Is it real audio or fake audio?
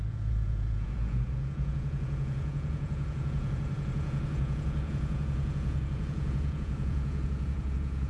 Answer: fake